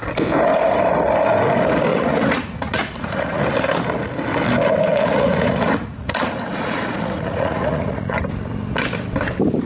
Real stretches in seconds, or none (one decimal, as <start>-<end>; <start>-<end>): 0.0-1.9; 3.4-4.9; 8.2-9.7